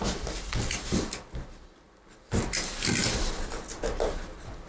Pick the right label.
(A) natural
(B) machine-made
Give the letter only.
A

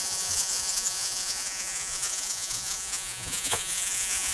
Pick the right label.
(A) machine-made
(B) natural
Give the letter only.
A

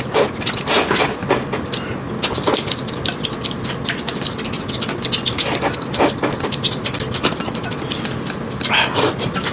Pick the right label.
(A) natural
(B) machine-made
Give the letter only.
A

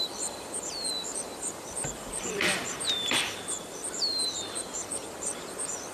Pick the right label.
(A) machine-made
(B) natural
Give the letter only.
A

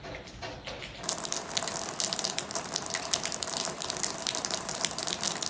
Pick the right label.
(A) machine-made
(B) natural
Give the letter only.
B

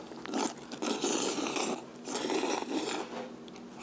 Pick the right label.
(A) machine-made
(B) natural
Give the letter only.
B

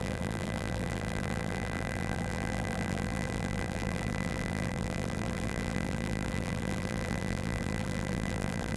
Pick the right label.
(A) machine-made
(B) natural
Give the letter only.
A